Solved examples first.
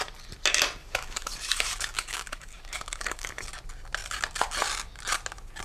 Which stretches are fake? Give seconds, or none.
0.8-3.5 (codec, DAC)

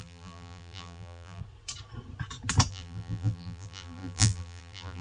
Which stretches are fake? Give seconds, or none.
0.0-1.4 (vocoder, BigVGAN v2); 2.7-5.0